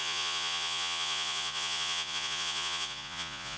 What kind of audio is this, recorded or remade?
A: remade